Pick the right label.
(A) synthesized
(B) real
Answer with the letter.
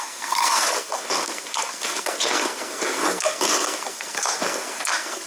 A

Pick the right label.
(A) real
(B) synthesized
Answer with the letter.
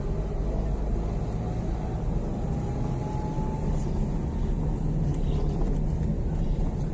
A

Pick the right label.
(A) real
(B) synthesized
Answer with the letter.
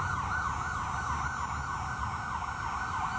A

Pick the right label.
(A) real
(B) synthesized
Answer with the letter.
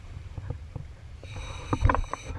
B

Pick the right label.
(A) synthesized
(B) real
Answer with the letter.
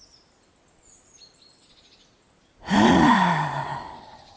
B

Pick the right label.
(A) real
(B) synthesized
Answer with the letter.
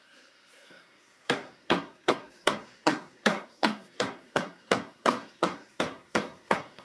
B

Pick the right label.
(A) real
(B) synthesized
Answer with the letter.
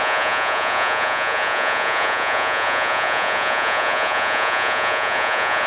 B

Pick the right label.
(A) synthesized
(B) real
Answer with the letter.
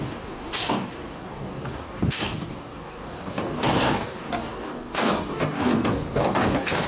A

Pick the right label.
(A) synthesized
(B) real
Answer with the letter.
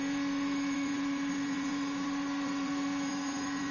A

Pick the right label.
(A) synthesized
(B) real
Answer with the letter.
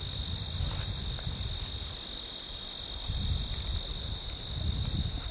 B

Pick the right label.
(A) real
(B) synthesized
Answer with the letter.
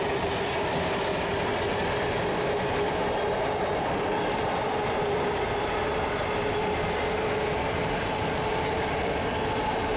A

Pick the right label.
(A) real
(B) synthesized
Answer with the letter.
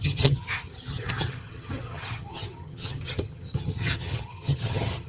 B